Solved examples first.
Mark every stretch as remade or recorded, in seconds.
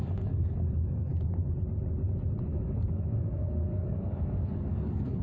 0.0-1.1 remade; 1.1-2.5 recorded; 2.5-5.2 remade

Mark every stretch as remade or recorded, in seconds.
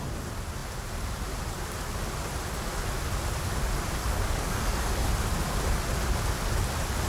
0.0-4.0 recorded; 4.0-5.1 remade; 5.1-7.1 recorded